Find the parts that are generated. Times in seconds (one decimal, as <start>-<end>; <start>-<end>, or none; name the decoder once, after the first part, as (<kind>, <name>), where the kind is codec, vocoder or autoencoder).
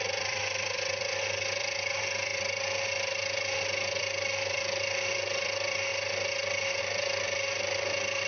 0.0-8.3 (vocoder, BigVGAN v2)